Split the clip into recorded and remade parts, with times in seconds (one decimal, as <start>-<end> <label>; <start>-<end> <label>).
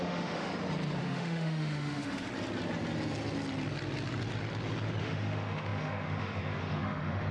0.0-0.5 remade; 0.5-1.0 recorded; 1.0-2.3 remade; 2.3-5.0 recorded; 5.0-7.3 remade